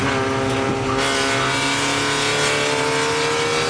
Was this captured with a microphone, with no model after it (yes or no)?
yes